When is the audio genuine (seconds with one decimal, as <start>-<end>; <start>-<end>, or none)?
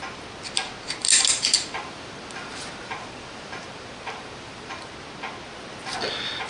0.0-1.0; 4.9-6.5